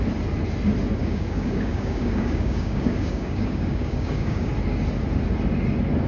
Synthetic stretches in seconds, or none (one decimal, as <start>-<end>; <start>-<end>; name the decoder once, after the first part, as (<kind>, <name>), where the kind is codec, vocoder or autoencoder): 1.0-4.5 (codec, DAC)